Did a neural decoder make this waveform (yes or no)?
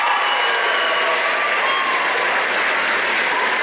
no